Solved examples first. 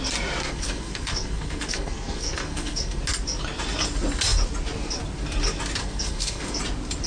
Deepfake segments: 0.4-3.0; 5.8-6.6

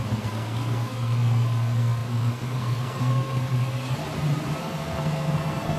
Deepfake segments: 0.0-4.0; 4.6-5.8

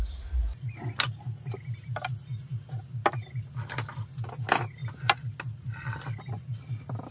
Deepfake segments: none

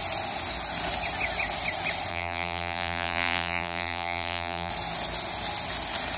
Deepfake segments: 2.1-4.7

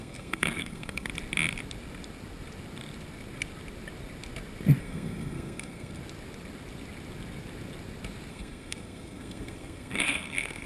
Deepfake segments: 0.0-1.1; 4.8-6.0; 8.3-10.7

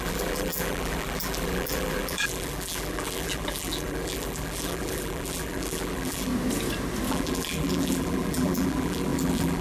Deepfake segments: 0.0-6.3; 7.1-9.6

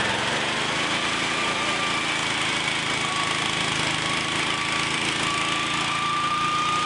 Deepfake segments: none